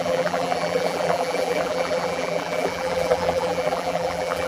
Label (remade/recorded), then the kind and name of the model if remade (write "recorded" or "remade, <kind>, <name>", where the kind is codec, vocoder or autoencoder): remade, vocoder, BigVGAN v2